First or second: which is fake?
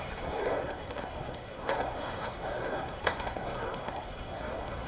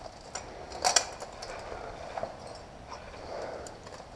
first